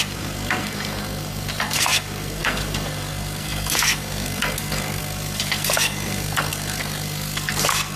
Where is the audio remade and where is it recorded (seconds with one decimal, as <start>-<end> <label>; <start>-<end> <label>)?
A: 0.0-8.0 remade